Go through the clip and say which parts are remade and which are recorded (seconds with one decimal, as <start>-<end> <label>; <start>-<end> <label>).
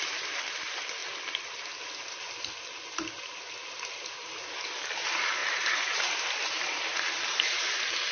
0.0-8.1 recorded